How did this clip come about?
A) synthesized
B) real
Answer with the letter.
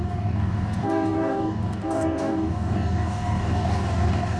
A